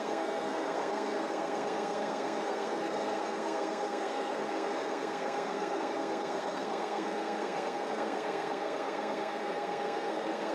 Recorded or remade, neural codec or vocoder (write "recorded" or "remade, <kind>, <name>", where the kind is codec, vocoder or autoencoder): remade, codec, SNAC